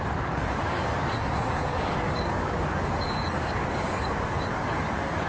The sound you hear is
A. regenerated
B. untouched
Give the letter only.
A